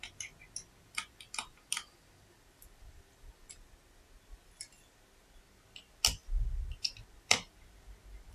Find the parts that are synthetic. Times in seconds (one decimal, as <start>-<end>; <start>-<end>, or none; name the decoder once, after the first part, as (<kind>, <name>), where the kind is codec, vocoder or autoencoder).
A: 0.0-3.4 (vocoder, BigVGAN v2); 7.2-8.3